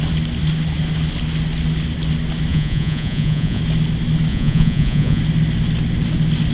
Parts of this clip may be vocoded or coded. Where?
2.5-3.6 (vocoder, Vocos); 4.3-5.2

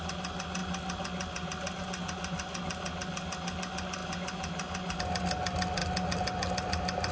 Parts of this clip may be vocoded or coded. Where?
none